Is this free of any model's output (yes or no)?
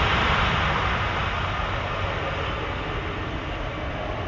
yes